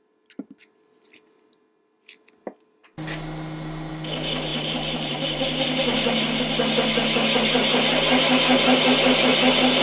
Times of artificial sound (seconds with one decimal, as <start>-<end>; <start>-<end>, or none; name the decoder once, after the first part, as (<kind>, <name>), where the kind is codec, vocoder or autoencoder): 4.5-6.4 (vocoder, BigVGAN v2)